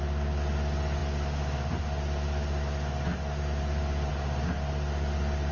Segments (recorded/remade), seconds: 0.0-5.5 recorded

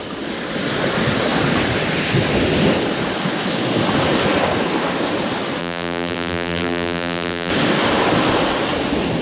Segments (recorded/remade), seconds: 0.0-5.6 recorded; 5.6-7.5 remade; 7.5-9.2 recorded

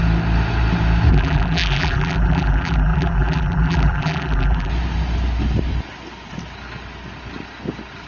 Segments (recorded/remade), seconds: 0.0-1.1 recorded; 1.1-4.7 remade; 4.7-8.1 recorded

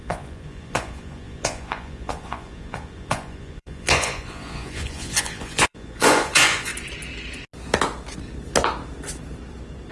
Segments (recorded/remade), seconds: 0.0-6.7 remade; 6.7-9.9 recorded

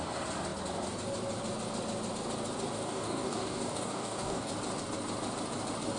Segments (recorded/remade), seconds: 0.0-2.7 recorded; 2.7-4.5 remade; 4.5-6.0 recorded

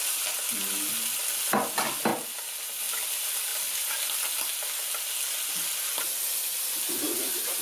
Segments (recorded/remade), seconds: 0.0-7.6 recorded